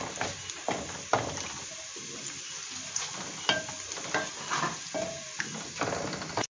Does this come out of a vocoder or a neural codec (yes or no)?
no